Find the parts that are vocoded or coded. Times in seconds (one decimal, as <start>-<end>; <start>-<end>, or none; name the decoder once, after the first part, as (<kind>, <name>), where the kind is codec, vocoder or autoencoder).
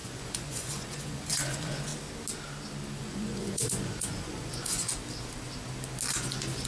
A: 0.0-1.9 (vocoder, Vocos); 3.0-4.9; 6.1-6.7